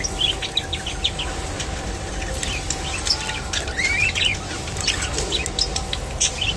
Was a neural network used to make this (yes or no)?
no